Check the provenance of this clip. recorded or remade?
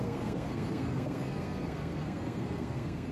remade